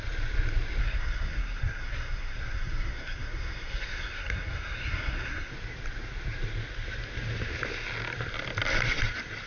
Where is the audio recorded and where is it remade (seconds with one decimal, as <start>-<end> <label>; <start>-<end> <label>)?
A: 0.0-0.8 recorded; 0.8-5.5 remade; 5.5-9.5 recorded